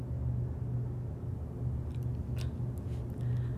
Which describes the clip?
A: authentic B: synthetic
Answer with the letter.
A